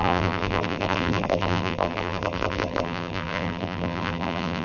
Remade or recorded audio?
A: remade